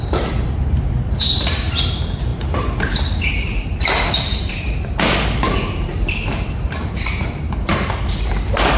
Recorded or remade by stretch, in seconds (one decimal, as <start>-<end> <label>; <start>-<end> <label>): 0.0-8.8 remade